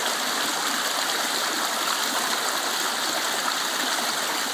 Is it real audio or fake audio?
real